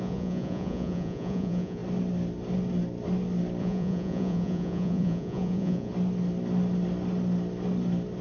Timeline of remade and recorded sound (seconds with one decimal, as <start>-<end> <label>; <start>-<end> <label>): 0.0-1.8 remade; 1.8-3.6 recorded; 3.6-5.9 remade; 5.9-8.2 recorded